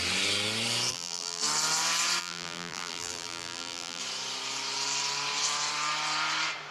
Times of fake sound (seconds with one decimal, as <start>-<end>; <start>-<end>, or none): 0.9-1.4; 2.2-4.0